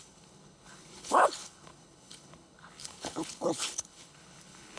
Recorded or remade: remade